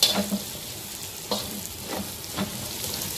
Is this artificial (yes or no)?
no